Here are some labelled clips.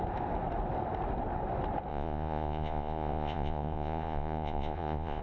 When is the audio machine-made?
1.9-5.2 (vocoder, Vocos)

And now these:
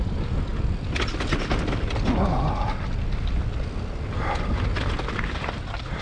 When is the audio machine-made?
none

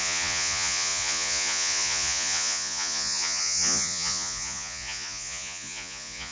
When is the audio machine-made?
0.0-6.3 (vocoder, Vocos)

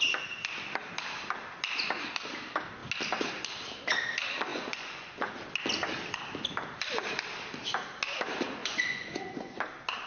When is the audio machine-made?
4.5-5.3 (vocoder, Vocos); 8.6-9.6